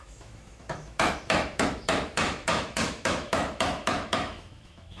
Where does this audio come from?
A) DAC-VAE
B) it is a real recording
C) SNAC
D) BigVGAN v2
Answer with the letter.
A